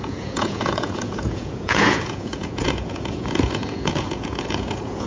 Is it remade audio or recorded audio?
remade